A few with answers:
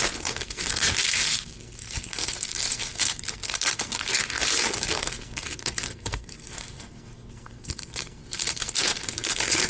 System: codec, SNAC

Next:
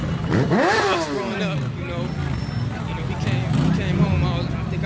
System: none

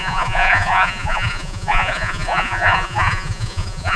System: vocoder, Vocos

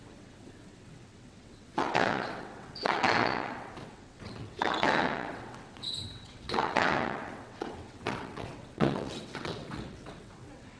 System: vocoder, WaveNeXt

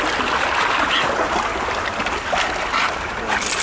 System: none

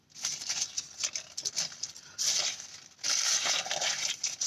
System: none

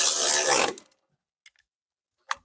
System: none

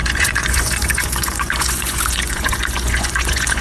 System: vocoder, Vocos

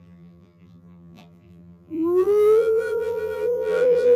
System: vocoder, BigVGAN v2